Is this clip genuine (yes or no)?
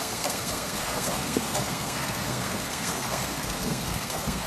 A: no